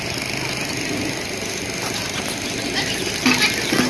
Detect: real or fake real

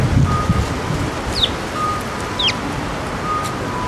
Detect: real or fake real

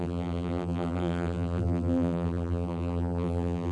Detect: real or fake fake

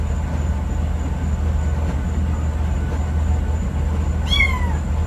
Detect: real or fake real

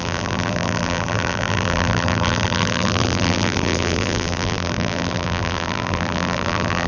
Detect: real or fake fake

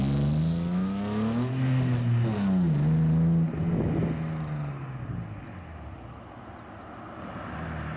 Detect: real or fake real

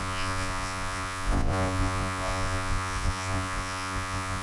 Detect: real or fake fake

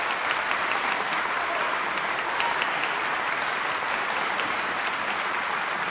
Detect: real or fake real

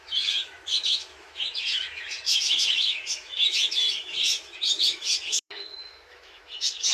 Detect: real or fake fake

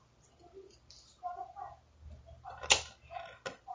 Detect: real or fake real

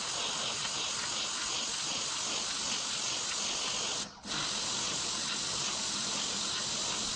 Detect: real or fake real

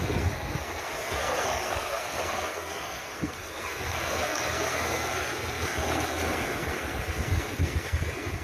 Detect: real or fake fake